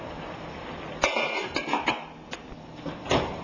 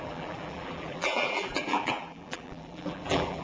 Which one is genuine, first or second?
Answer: first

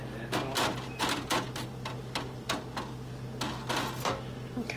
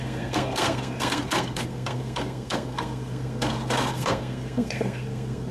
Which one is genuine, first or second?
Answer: first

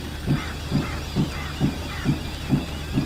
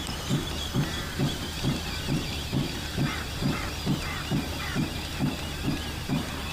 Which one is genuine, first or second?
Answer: first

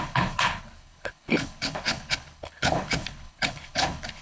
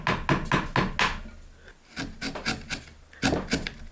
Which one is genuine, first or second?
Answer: second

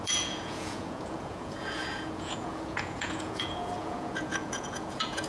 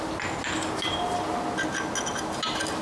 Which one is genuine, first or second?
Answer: second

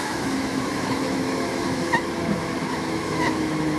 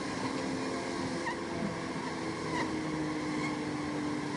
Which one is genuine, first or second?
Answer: second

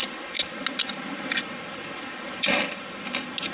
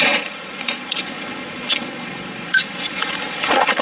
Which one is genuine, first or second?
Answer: first